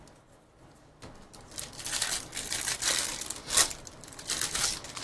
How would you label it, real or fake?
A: real